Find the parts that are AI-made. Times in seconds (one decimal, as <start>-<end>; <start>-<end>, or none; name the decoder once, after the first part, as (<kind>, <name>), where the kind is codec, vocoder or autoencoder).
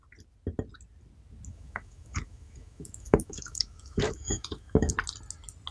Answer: 1.5-4.9 (autoencoder, DAC-VAE)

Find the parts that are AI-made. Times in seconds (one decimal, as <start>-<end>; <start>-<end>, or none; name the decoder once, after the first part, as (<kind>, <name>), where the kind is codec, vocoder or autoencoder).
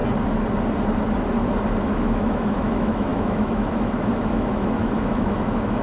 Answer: 1.8-5.8 (autoencoder, DAC-VAE)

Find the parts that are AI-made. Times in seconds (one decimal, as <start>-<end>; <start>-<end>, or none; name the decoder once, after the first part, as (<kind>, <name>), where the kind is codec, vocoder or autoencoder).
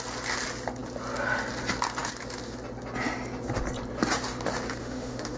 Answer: 4.8-5.4 (autoencoder, DAC-VAE)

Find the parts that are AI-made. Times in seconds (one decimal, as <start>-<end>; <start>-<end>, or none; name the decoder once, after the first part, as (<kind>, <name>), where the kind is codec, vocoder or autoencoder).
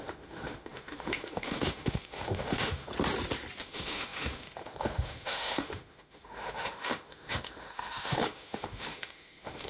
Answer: 0.0-2.9 (autoencoder, DAC-VAE); 3.6-9.7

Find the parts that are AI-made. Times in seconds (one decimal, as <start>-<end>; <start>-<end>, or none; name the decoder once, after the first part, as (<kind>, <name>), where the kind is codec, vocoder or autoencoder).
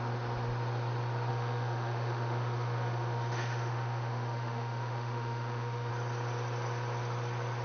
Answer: 1.3-5.9 (autoencoder, DAC-VAE)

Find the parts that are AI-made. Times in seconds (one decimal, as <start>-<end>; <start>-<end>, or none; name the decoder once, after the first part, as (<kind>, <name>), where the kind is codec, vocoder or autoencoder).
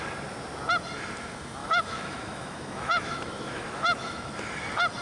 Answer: 1.6-4.3 (autoencoder, DAC-VAE)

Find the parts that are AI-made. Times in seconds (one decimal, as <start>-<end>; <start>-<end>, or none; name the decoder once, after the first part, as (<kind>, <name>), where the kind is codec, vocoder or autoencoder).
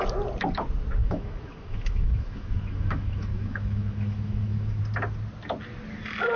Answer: 1.0-4.8 (autoencoder, DAC-VAE)